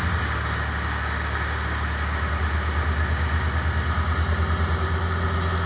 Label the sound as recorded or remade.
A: recorded